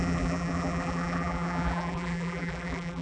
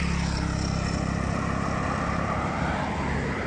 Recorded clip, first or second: second